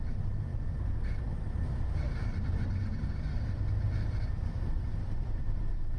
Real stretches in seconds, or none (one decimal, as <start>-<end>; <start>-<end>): 0.0-2.2